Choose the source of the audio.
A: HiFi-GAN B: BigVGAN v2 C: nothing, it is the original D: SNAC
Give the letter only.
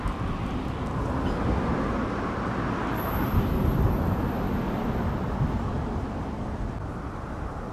C